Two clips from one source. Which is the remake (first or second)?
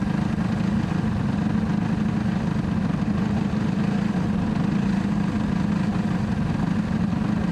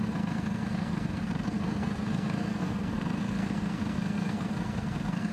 second